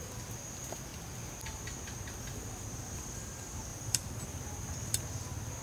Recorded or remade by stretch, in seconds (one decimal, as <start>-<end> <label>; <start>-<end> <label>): 0.0-3.7 recorded; 3.7-4.7 remade; 4.7-5.6 recorded